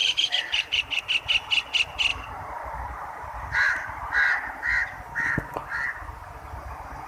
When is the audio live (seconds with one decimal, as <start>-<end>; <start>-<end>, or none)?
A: 1.0-2.1; 4.1-7.1